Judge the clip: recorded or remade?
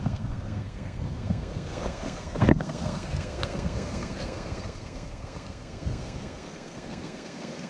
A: remade